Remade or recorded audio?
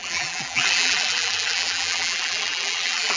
remade